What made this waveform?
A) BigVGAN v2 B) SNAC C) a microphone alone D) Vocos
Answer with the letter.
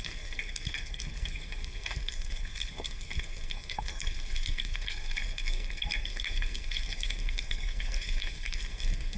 B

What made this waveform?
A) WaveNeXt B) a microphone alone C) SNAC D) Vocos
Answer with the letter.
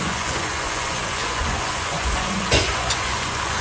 D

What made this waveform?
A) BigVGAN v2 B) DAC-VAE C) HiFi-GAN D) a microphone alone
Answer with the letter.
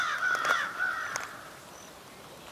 D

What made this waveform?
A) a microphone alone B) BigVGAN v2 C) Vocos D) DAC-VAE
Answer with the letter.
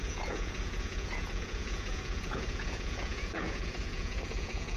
C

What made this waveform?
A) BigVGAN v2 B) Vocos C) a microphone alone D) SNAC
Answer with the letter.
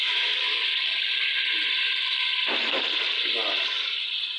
C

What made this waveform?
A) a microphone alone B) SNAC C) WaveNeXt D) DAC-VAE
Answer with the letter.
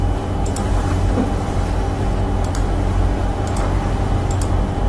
A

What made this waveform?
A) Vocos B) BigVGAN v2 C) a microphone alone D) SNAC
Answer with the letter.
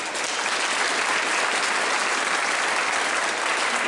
C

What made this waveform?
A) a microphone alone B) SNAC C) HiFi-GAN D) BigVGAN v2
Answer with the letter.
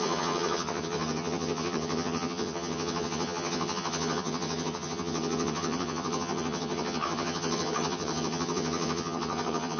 C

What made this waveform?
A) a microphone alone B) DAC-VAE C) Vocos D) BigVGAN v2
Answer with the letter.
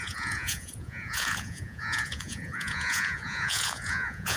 C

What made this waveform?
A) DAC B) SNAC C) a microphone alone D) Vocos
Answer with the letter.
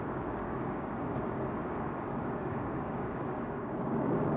A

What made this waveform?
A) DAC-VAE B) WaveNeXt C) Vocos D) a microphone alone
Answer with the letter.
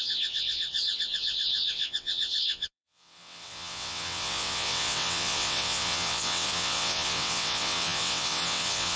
B